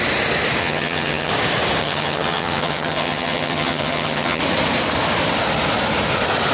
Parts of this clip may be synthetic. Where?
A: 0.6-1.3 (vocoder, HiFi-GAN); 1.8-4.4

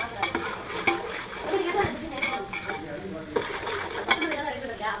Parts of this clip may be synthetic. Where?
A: none

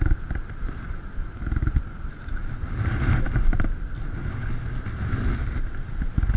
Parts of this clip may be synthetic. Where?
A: none

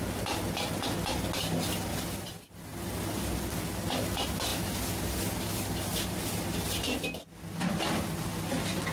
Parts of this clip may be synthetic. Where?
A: none